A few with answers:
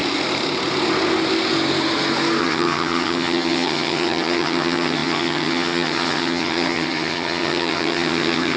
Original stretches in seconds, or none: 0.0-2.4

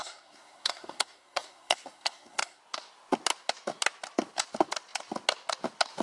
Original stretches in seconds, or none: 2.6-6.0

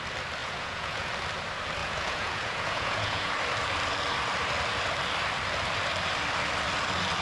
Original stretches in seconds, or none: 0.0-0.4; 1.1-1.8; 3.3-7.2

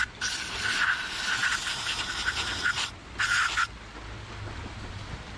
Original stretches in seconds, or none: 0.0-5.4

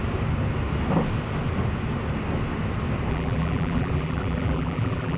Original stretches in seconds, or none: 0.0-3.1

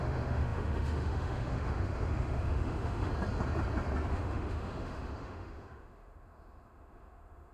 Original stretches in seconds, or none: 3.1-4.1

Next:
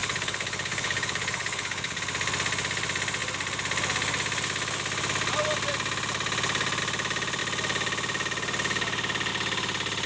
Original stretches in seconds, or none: 2.0-10.1